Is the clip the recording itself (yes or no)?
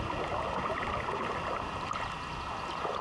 yes